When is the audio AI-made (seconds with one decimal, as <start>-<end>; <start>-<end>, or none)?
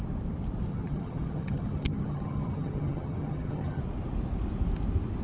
0.7-3.8